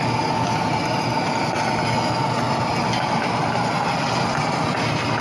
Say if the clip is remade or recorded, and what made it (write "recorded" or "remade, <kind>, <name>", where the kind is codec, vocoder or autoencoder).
recorded